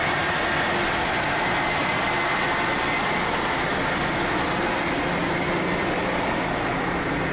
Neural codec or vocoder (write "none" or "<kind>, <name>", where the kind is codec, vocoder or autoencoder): none